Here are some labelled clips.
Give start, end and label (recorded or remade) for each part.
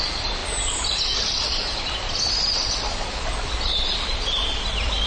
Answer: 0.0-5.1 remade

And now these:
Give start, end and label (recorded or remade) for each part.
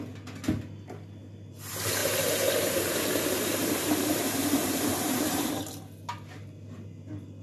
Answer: 0.0-2.0 recorded; 2.0-5.6 remade; 5.6-7.4 recorded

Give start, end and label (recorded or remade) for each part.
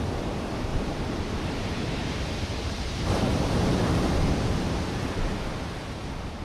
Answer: 0.0-0.7 recorded; 0.7-4.5 remade; 4.5-6.4 recorded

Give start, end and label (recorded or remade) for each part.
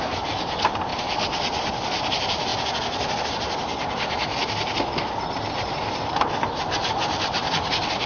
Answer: 0.0-8.1 recorded